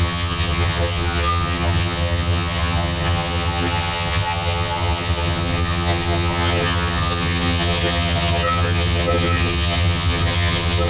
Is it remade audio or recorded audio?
remade